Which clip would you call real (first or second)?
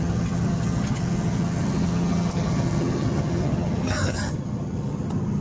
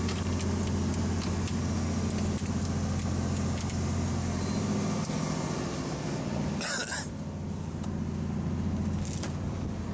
second